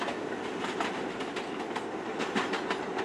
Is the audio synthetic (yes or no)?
no